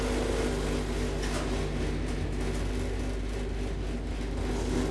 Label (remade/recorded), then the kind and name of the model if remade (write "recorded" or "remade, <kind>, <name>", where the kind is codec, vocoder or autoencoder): recorded